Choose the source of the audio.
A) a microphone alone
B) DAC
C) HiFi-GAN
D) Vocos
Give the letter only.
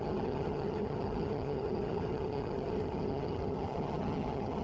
C